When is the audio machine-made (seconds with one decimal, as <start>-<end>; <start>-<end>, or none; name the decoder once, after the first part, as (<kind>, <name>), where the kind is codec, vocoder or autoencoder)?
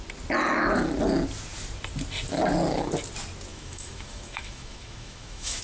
3.5-5.6 (autoencoder, DAC-VAE)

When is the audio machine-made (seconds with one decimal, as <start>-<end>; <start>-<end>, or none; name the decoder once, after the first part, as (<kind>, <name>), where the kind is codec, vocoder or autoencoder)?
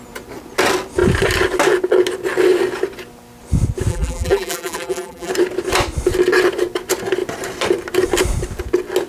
3.9-5.3 (vocoder, BigVGAN v2)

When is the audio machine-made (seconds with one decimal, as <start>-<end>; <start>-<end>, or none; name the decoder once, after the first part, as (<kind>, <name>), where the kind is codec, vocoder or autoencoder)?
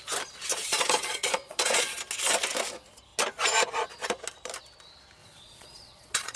0.5-2.0 (vocoder, Vocos); 5.2-6.4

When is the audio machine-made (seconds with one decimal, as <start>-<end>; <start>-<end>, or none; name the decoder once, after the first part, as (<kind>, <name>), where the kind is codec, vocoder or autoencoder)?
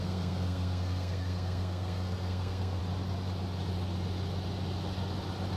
0.0-2.8 (codec, SNAC)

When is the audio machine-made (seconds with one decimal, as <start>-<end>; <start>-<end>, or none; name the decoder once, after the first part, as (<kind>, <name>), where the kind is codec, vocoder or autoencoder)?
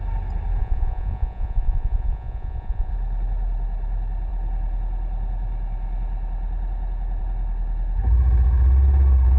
0.6-2.9 (vocoder, Vocos)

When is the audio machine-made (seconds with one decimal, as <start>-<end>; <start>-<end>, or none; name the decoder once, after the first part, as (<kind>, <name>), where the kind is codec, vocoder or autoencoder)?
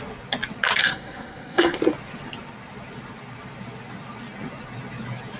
0.8-1.8 (codec, SNAC)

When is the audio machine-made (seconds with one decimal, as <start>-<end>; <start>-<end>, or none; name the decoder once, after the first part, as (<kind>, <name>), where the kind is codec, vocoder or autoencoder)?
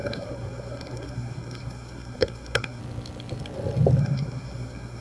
0.0-2.8 (codec, SNAC); 4.0-5.0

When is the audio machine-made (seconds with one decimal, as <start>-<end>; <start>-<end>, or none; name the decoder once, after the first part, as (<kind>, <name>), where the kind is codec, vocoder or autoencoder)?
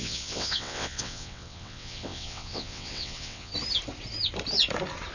0.0-3.5 (vocoder, WaveNeXt)